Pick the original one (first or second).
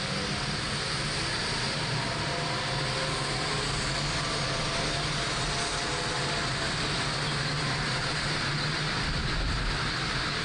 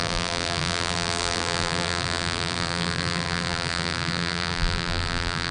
first